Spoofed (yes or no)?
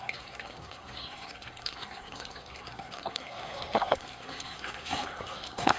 yes